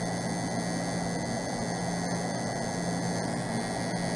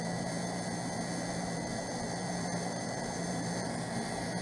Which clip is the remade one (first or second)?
second